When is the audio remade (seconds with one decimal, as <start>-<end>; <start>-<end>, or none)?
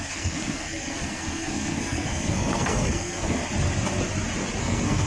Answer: 0.0-3.4; 4.6-5.1